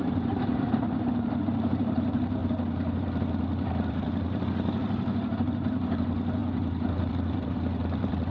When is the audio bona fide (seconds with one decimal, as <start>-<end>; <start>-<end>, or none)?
none